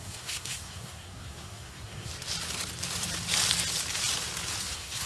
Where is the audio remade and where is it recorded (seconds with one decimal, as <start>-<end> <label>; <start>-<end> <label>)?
0.0-2.1 remade; 2.1-4.6 recorded; 4.6-5.1 remade